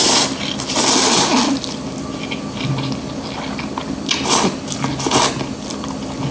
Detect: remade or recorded recorded